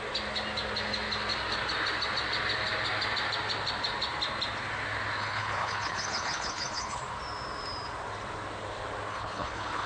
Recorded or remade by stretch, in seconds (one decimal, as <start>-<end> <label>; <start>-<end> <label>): 0.0-5.2 recorded; 5.2-7.0 remade; 7.0-9.1 recorded; 9.1-9.9 remade